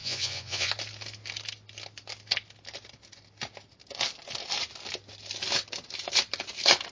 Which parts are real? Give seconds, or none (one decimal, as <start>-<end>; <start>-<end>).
0.7-6.9